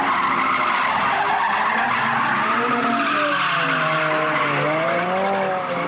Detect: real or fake real